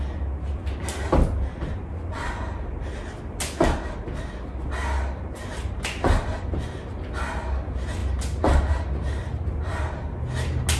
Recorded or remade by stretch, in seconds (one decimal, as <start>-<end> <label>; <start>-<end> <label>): 0.0-10.8 recorded